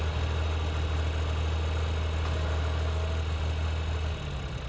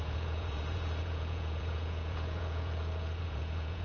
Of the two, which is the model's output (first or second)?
second